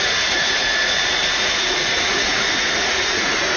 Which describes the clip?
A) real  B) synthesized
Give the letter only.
B